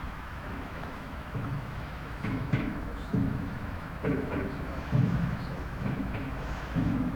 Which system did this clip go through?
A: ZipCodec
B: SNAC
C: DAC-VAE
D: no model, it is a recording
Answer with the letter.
C